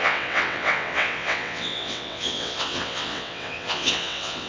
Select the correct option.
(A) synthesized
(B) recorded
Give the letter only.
A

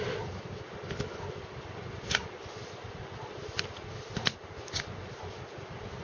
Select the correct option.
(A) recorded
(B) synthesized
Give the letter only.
A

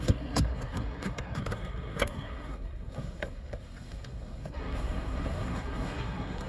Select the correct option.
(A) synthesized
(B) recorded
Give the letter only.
A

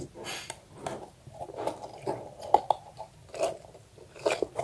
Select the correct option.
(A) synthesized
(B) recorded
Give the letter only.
B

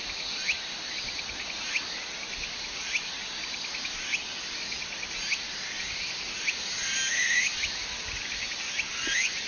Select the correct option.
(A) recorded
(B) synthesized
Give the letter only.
A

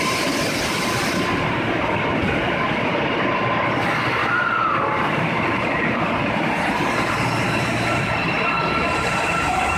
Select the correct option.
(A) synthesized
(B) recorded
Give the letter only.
A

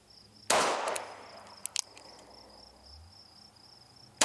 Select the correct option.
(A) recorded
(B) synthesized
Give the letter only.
A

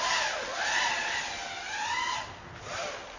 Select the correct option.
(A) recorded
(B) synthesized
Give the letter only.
A